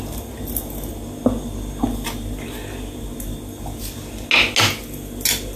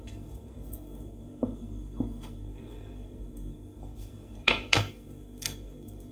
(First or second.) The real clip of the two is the first